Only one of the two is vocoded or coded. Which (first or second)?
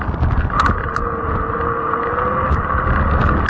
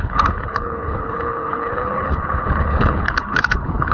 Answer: second